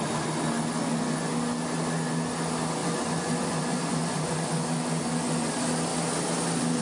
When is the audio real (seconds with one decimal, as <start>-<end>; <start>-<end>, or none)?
0.0-0.8; 1.3-2.8; 5.5-6.8